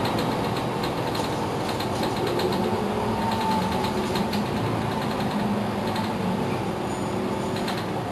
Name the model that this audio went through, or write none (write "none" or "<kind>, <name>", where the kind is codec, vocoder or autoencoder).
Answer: none